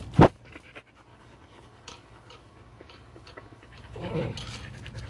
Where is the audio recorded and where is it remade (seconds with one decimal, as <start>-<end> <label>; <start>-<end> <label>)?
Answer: 0.0-1.1 recorded; 1.1-4.2 remade; 4.2-5.1 recorded